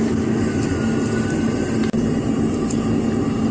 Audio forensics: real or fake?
real